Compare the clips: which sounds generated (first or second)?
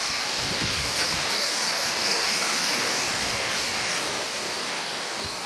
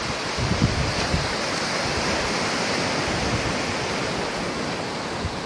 first